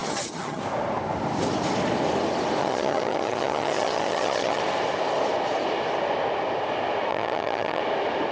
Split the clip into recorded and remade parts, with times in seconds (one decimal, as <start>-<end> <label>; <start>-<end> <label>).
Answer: 0.0-0.6 remade; 0.6-2.6 recorded; 2.6-4.6 remade; 4.6-7.1 recorded; 7.1-7.8 remade; 7.8-8.3 recorded